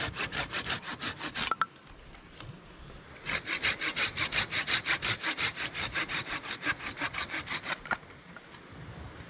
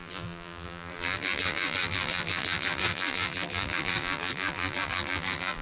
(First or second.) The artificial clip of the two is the second